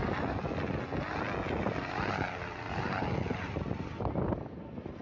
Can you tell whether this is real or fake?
real